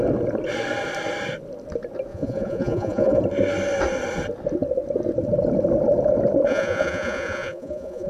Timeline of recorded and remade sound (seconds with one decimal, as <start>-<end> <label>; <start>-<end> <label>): 0.0-2.1 recorded; 2.1-3.2 remade; 3.2-6.5 recorded; 6.5-8.1 remade